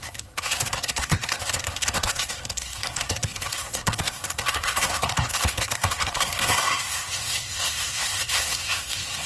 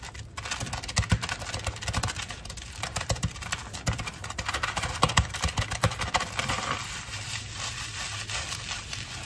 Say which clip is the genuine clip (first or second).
second